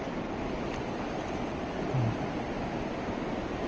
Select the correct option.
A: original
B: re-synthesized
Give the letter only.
A